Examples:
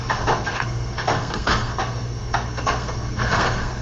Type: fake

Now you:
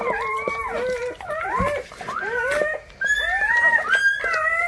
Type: real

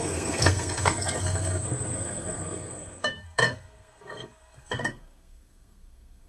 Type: fake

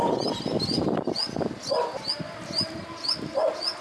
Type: real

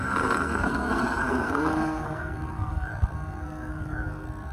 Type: fake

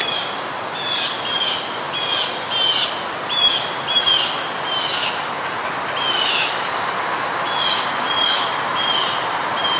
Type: real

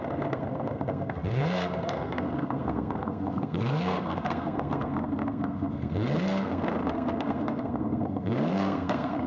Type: fake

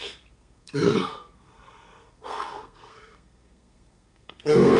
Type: fake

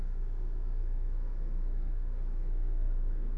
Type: fake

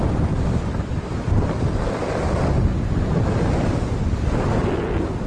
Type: real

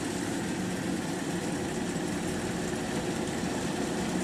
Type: real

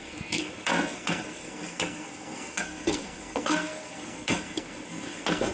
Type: fake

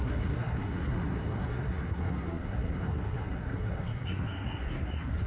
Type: fake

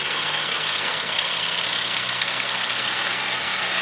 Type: fake